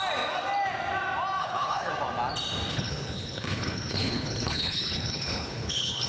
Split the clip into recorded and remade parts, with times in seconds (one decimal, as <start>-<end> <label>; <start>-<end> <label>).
0.0-1.4 recorded; 1.4-1.9 remade; 1.9-2.7 recorded; 2.7-6.1 remade